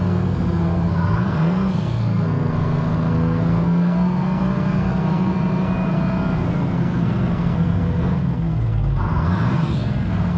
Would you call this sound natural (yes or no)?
no